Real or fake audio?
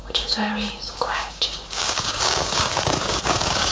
fake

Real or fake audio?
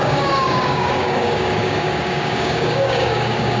fake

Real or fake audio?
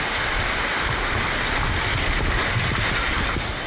real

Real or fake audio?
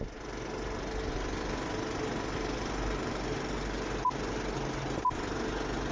real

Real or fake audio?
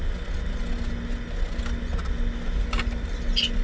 real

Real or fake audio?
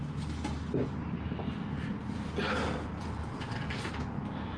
real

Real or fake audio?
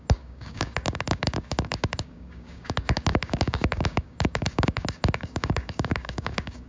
fake